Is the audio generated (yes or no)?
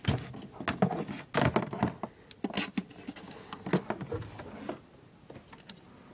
no